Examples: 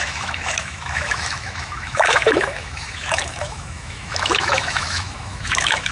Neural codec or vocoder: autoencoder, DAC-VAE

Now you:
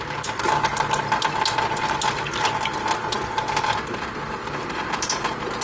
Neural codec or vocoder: none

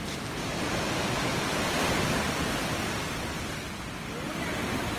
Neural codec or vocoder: none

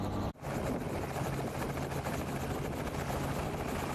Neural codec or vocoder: none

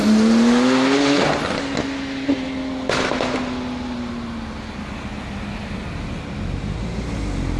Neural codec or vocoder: none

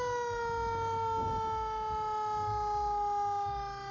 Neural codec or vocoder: none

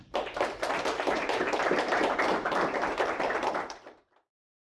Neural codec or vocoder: vocoder, BigVGAN v2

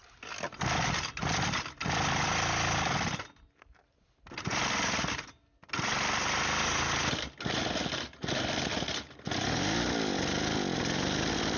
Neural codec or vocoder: none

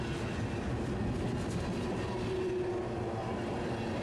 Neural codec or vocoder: none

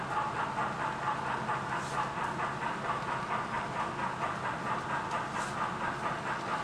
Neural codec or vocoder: none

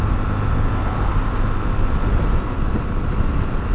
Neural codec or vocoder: none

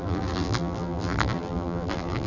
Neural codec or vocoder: vocoder, BigVGAN v2